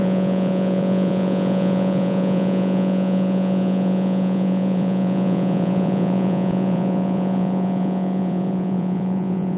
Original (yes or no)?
no